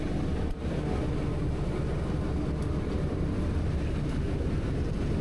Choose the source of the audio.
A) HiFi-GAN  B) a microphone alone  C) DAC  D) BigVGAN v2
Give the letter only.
B